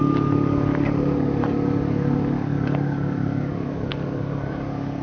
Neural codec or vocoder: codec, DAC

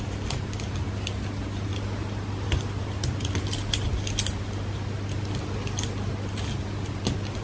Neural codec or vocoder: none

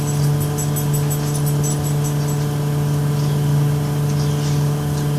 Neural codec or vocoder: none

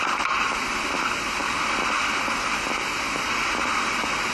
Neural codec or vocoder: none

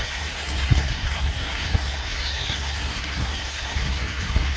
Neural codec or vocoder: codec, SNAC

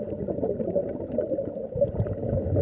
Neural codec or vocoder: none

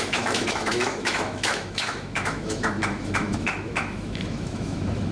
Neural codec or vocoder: autoencoder, DAC-VAE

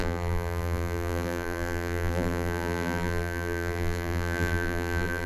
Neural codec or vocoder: vocoder, BigVGAN v2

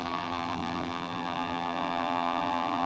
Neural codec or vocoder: vocoder, BigVGAN v2